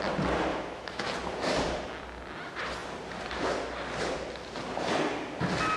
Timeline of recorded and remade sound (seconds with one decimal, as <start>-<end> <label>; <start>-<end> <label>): 0.0-0.5 recorded; 0.5-1.1 remade; 1.1-5.8 recorded